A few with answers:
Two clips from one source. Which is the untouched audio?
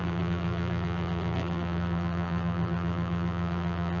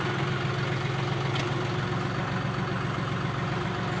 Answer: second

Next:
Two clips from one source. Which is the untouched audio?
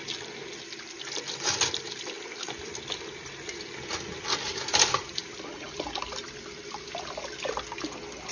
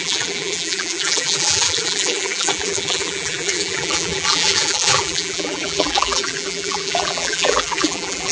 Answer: first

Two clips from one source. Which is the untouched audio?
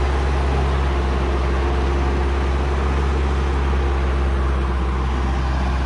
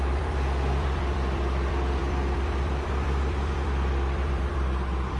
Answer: first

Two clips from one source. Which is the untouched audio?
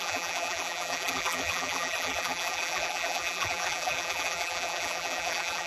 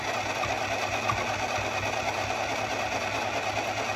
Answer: second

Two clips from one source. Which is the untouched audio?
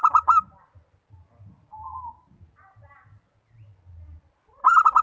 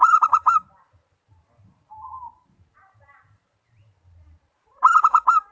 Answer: first